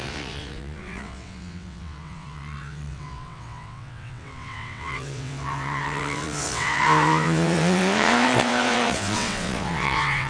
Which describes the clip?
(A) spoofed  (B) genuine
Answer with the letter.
A